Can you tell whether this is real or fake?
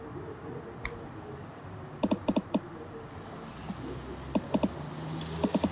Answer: real